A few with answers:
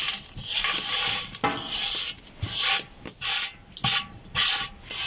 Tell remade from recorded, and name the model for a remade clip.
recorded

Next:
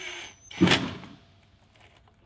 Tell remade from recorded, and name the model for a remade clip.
recorded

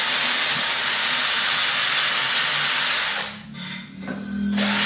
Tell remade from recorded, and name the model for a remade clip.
recorded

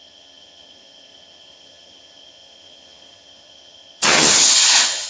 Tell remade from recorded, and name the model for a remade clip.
remade, vocoder, HiFi-GAN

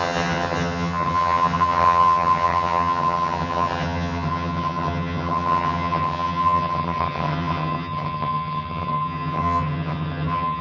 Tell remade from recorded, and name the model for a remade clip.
remade, vocoder, HiFi-GAN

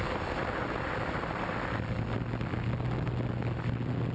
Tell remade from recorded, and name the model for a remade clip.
recorded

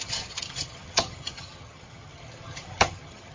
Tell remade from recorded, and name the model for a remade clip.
remade, vocoder, HiFi-GAN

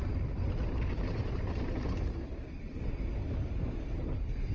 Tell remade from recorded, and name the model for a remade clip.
recorded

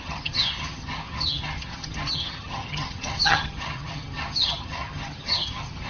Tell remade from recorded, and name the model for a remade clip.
remade, vocoder, HiFi-GAN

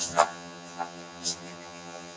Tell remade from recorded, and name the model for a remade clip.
remade, vocoder, HiFi-GAN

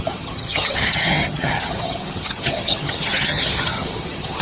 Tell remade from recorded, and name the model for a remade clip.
remade, vocoder, HiFi-GAN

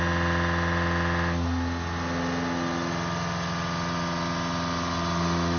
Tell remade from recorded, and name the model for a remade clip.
recorded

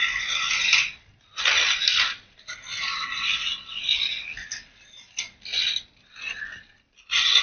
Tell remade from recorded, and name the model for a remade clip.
recorded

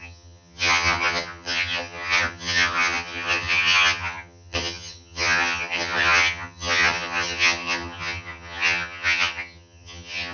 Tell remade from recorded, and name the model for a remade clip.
remade, vocoder, HiFi-GAN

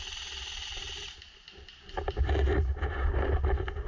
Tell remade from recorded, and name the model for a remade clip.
recorded